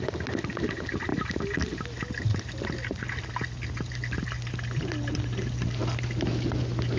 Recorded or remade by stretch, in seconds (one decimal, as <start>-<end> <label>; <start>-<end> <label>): 0.0-7.0 recorded